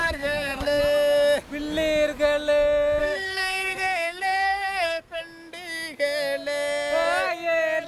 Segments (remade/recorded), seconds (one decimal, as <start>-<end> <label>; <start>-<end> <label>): 0.0-0.8 remade; 0.8-3.0 recorded; 3.0-5.2 remade; 5.2-7.9 recorded